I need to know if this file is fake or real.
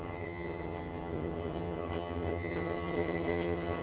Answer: fake